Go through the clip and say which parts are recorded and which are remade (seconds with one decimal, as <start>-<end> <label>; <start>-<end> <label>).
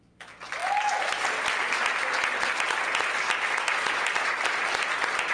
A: 0.0-5.3 recorded